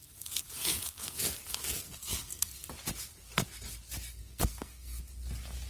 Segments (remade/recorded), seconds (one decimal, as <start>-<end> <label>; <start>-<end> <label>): 0.0-2.7 remade; 2.7-4.1 recorded; 4.1-5.0 remade; 5.0-5.7 recorded